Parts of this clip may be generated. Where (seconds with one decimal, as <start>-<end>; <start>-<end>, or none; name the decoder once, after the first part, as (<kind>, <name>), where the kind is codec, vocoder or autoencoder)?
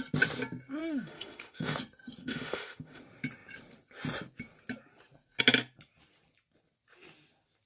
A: 0.8-1.8 (autoencoder, DAC-VAE); 2.2-3.0